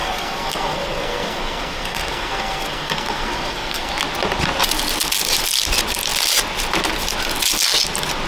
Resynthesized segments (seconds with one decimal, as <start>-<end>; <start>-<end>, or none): 0.0-3.9